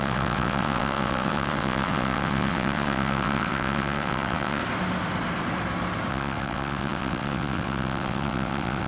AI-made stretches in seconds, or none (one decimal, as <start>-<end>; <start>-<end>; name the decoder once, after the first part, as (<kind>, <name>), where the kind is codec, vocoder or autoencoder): 0.0-4.6 (vocoder, WaveNeXt); 6.1-8.9